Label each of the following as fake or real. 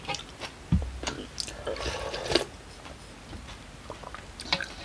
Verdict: real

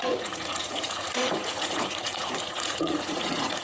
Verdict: fake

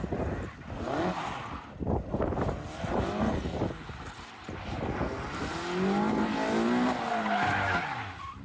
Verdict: real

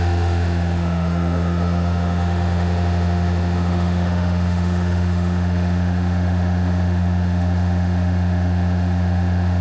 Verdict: fake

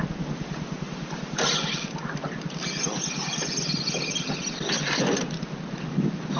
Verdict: real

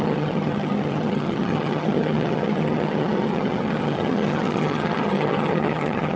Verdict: fake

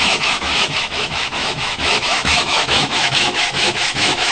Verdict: fake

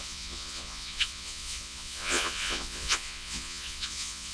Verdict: fake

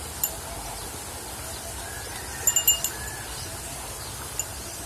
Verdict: real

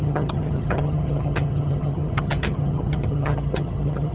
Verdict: fake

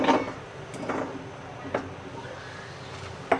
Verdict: real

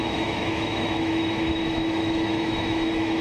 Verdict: fake